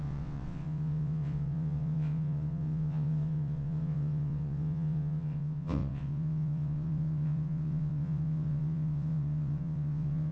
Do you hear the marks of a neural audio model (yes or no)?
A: yes